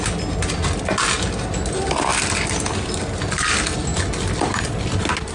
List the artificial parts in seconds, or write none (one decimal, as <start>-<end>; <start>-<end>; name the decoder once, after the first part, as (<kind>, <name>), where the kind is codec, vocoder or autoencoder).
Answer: none